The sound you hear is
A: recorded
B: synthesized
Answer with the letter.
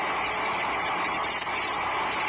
A